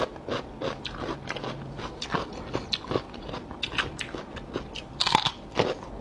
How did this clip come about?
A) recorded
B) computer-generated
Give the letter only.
A